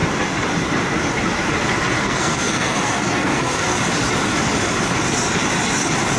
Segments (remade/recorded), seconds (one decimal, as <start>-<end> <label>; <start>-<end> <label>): 0.0-2.0 recorded; 2.0-3.8 remade; 3.8-6.2 recorded